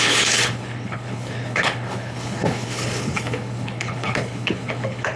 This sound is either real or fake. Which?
fake